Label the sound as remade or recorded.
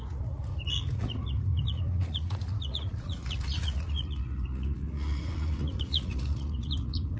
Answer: remade